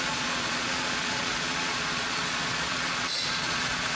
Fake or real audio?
fake